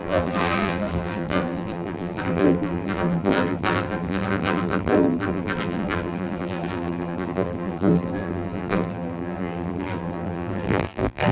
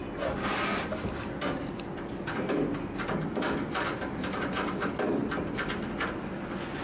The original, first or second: second